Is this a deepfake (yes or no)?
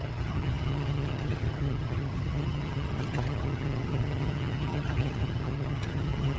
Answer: yes